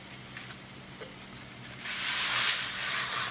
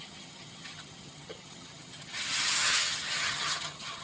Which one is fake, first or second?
second